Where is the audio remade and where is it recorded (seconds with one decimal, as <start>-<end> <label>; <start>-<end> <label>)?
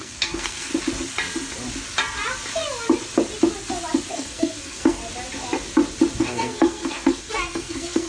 0.0-0.7 remade; 0.7-4.1 recorded; 4.1-5.0 remade; 5.0-6.2 recorded; 6.2-8.1 remade